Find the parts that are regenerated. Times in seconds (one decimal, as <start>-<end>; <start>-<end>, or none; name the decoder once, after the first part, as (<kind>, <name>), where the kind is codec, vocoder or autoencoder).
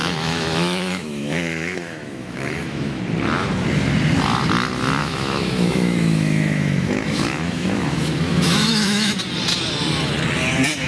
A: 0.0-3.0 (autoencoder, DAC-VAE); 5.0-9.1